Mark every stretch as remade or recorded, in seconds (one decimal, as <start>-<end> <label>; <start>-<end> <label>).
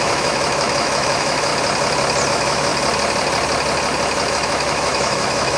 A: 0.0-1.5 remade; 1.5-2.3 recorded; 2.3-2.7 remade; 2.7-4.3 recorded; 4.3-5.6 remade